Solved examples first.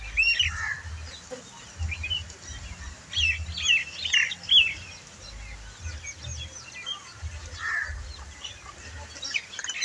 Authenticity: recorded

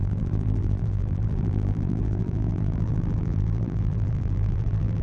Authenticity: remade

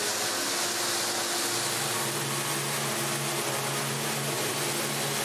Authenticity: recorded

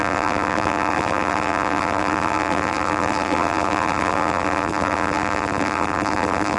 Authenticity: remade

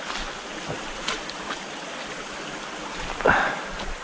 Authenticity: recorded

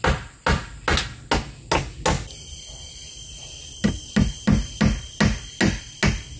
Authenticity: recorded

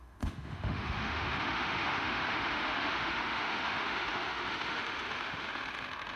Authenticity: remade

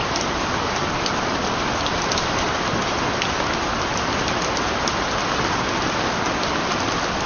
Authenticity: recorded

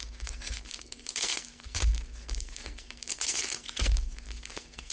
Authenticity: remade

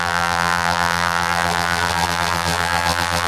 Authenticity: remade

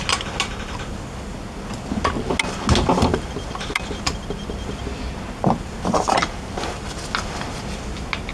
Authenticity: recorded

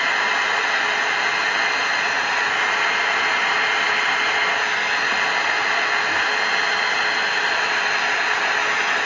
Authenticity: recorded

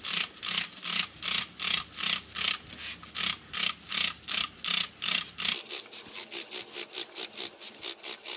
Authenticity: recorded